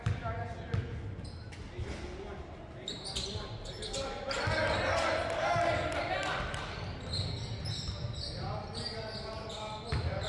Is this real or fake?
real